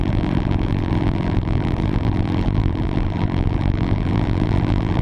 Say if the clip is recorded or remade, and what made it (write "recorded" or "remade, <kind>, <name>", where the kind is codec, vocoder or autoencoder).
remade, vocoder, BigVGAN v2